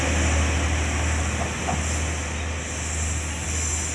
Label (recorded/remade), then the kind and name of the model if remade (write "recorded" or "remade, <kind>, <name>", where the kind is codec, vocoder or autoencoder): recorded